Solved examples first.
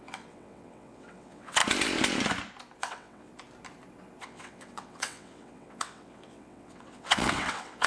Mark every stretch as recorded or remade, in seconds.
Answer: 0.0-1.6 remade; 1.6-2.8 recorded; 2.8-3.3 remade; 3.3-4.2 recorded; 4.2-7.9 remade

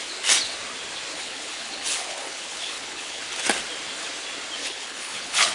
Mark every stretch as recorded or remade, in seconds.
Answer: 0.0-1.1 recorded; 1.1-3.2 remade; 3.2-4.6 recorded; 4.6-5.5 remade